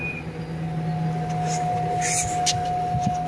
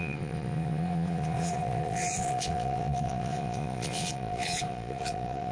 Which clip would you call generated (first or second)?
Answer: second